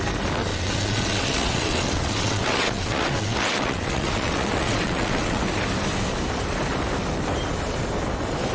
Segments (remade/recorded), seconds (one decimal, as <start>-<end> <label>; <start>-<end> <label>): 0.0-0.5 recorded; 0.5-5.4 remade; 5.4-8.5 recorded